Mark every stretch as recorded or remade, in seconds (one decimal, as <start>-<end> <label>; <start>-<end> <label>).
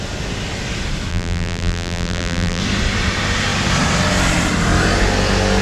0.0-1.1 recorded; 1.1-2.6 remade; 2.6-5.6 recorded